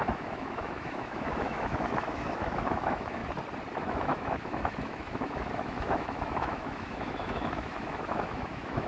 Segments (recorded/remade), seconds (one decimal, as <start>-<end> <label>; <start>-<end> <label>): 0.0-3.2 remade; 3.2-3.8 recorded; 3.8-8.9 remade